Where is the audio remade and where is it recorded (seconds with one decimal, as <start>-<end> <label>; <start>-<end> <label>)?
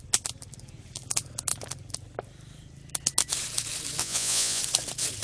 0.0-4.0 recorded; 4.0-4.6 remade; 4.6-5.2 recorded